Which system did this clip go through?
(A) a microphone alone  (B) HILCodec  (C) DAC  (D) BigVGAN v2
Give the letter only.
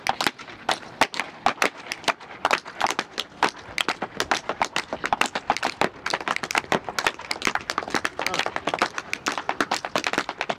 A